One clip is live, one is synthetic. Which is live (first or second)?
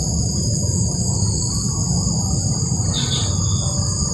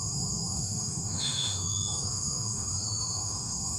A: first